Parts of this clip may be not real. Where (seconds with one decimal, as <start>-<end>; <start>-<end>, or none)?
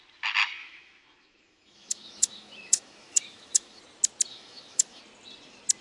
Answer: 0.6-3.8; 4.3-5.0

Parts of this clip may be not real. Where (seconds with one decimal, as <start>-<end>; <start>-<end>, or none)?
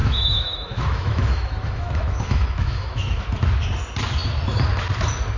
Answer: 0.0-3.2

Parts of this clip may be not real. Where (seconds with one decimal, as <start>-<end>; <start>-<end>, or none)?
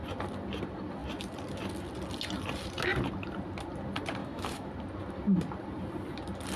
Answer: 4.2-4.7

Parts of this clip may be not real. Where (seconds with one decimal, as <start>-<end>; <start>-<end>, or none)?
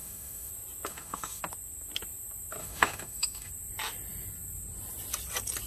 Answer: 0.0-0.5; 0.9-1.4; 2.6-3.5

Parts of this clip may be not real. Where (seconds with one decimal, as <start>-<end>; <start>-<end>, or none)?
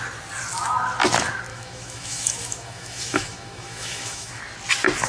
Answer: 1.5-4.4